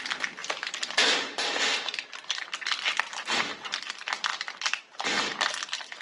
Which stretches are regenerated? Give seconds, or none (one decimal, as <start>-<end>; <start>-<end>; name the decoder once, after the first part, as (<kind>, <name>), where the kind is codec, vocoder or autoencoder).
0.4-2.1 (vocoder, BigVGAN v2); 4.3-5.6